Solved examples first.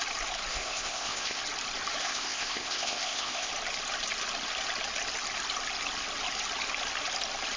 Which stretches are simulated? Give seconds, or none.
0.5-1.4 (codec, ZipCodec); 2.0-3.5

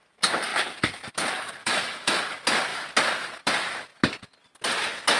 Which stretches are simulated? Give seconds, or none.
1.6-2.2 (autoencoder, DAC-VAE)

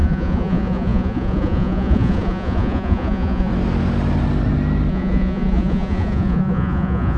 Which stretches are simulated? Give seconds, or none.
0.0-3.5 (vocoder, Vocos); 4.9-7.2

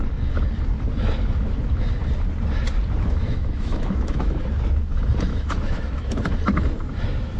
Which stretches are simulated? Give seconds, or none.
3.2-4.5 (autoencoder, DAC-VAE); 5.3-6.2

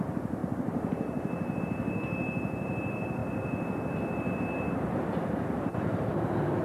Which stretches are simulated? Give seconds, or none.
0.4-1.6 (vocoder, BigVGAN v2)

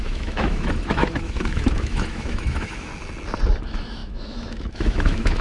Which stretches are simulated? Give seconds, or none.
0.0-2.9 (autoencoder, DAC-VAE); 3.6-5.4

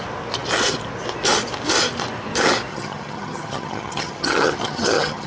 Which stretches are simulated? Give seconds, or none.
2.7-5.3 (vocoder, HiFi-GAN)

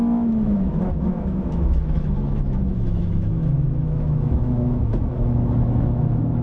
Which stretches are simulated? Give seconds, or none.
0.0-6.4 (autoencoder, DAC-VAE)